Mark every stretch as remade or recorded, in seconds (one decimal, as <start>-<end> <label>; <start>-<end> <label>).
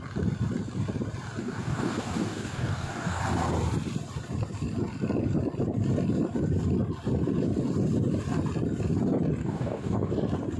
0.0-1.4 recorded; 1.4-3.2 remade; 3.2-9.4 recorded; 9.4-10.1 remade; 10.1-10.6 recorded